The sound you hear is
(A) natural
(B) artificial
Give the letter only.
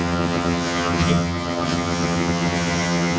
B